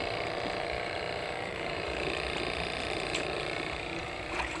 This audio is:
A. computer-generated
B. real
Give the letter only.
A